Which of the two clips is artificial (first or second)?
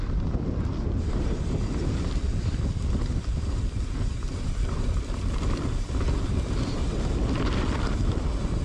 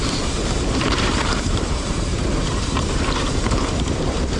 second